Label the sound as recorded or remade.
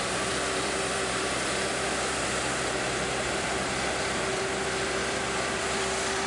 remade